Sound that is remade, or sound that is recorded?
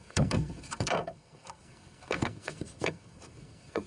remade